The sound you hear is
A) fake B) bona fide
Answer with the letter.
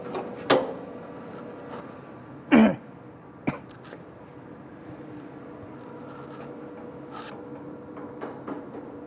B